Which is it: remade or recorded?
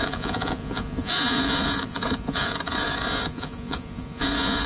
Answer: remade